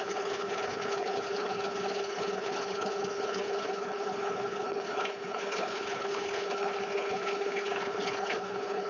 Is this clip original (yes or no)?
no